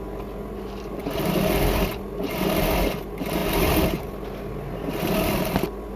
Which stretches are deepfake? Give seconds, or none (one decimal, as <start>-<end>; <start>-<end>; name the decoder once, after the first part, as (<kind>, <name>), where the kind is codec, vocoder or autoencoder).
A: none